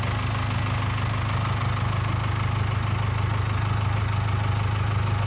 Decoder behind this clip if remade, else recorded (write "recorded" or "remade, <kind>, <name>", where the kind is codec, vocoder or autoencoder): recorded